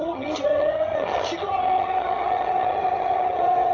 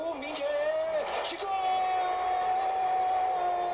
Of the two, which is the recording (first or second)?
second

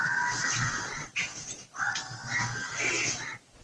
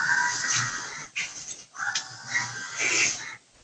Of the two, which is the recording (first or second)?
second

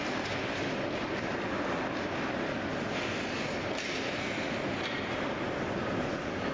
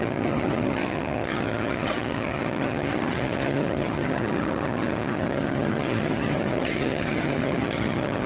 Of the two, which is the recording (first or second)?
first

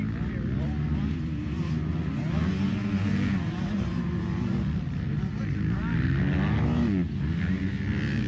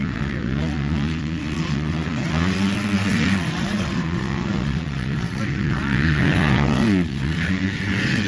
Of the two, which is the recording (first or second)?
first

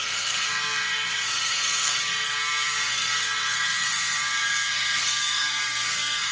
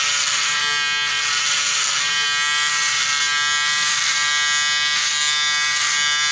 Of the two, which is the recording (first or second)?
second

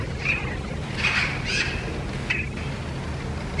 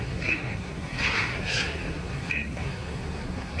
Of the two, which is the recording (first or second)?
first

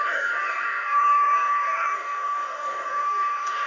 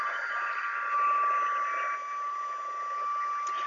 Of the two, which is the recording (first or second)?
second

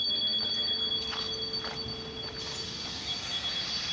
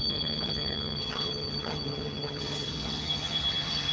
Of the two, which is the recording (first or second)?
first